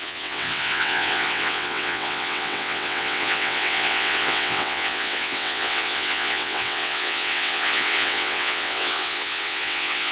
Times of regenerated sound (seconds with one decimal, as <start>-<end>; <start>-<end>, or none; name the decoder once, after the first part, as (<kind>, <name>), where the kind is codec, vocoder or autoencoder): 0.0-10.1 (vocoder, WaveNeXt)